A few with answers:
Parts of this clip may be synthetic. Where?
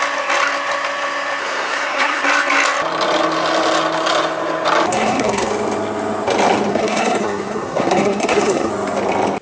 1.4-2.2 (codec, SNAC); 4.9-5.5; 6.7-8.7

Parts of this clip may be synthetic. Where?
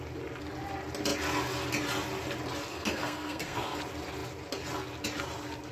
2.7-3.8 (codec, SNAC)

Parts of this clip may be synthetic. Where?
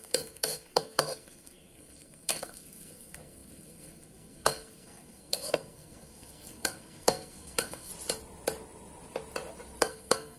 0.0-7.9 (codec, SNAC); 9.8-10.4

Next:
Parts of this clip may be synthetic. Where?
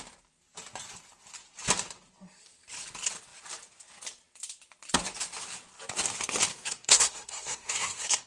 6.5-8.3 (codec, SNAC)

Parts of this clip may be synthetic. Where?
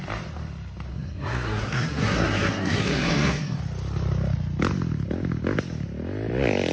0.9-3.6 (codec, SNAC)